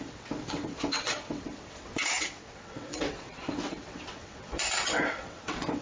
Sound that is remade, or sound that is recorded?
remade